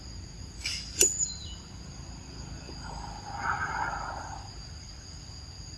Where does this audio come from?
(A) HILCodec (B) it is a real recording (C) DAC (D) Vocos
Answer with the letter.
B